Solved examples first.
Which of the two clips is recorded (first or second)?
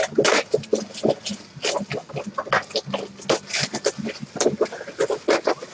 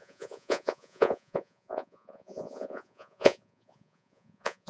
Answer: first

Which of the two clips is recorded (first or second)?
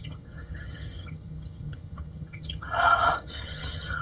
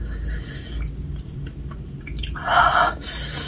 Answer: second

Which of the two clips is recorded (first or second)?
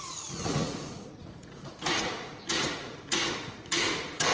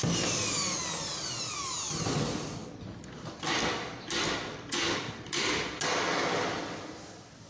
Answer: second